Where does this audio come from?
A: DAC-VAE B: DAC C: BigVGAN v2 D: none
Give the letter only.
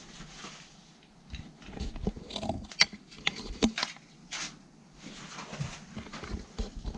D